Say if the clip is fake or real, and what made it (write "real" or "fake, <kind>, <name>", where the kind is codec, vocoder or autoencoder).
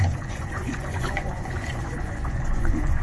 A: fake, vocoder, Vocos